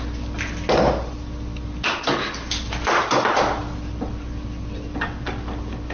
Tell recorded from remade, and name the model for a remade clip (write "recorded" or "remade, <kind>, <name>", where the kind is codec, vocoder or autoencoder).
recorded